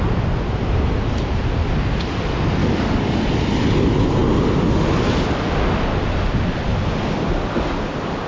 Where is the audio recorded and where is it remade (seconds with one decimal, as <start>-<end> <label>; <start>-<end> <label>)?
0.0-2.6 recorded; 2.6-3.2 remade; 3.2-8.3 recorded